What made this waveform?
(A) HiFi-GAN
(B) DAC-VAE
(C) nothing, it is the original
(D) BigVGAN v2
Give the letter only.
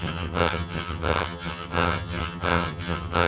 A